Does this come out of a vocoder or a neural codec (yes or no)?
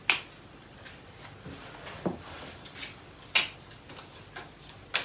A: no